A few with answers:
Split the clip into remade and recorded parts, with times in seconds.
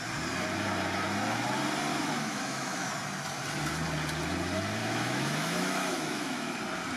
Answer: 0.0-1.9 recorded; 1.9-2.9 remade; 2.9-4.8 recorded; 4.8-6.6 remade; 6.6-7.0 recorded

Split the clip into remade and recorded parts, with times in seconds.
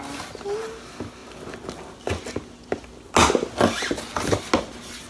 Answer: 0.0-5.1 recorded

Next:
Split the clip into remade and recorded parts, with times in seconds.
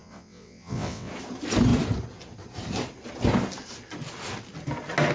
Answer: 0.0-1.1 remade; 1.1-5.1 recorded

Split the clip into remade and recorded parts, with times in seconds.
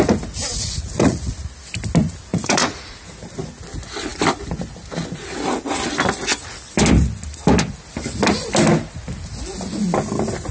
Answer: 0.0-0.4 recorded; 0.4-1.3 remade; 1.3-2.3 recorded; 2.3-3.1 remade; 3.1-10.5 recorded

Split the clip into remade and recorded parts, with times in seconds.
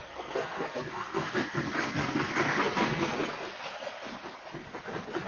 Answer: 0.0-3.2 remade; 3.2-5.3 recorded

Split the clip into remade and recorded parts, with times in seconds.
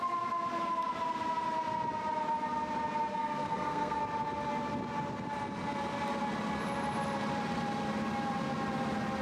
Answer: 0.0-3.1 recorded; 3.1-4.0 remade; 4.0-9.2 recorded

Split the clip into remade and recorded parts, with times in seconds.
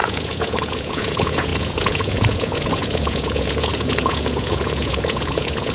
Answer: 0.0-5.7 remade